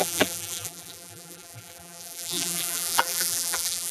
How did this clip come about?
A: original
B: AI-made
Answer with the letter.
B